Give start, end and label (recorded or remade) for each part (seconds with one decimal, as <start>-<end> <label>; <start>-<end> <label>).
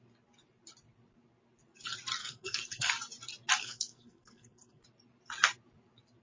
0.0-2.2 recorded; 2.2-2.9 remade; 2.9-3.6 recorded; 3.6-4.8 remade; 4.8-6.2 recorded